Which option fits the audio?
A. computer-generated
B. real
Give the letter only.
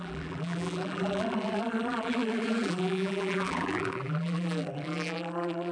A